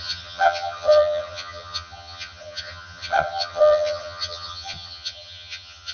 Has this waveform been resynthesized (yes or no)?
yes